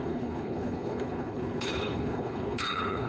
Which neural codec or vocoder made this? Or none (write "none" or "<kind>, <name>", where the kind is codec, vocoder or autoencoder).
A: codec, HILCodec